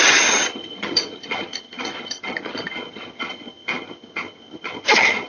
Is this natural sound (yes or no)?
no